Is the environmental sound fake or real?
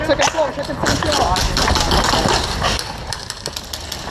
real